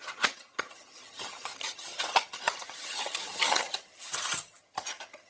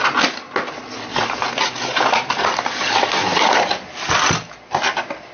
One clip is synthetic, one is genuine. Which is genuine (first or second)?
second